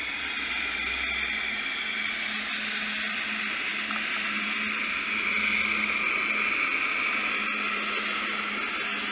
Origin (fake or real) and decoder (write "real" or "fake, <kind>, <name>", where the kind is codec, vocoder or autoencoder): real